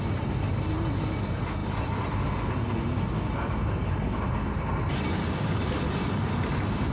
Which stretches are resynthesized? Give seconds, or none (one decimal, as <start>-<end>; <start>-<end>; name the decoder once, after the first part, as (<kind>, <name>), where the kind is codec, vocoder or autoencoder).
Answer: none